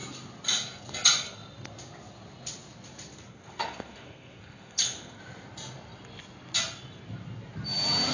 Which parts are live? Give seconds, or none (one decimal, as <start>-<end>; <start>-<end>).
0.0-3.3; 5.2-8.1